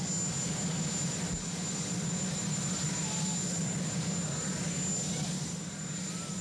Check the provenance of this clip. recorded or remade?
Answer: recorded